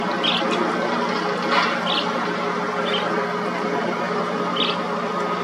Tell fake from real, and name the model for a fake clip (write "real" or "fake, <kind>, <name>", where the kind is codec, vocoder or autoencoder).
real